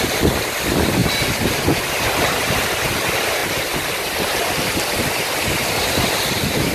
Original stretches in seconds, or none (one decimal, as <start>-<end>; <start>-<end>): 0.0-6.7